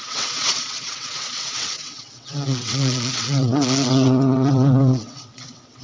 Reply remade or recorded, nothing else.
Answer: remade